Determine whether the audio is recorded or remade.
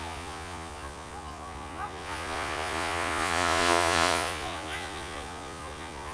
remade